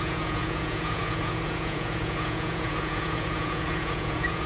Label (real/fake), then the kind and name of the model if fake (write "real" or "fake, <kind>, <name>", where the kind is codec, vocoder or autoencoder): fake, vocoder, Vocos